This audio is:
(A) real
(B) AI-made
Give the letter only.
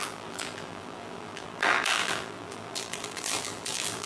B